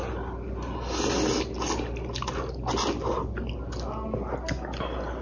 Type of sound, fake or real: real